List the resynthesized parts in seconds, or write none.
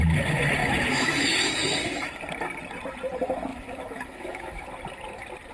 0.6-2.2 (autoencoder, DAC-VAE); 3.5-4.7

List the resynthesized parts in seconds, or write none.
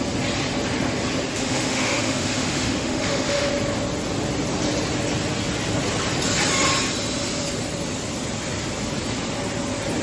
1.3-3.5 (autoencoder, DAC-VAE)